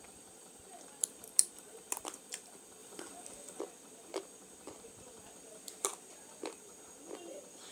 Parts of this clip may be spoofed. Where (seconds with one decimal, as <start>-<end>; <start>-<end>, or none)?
none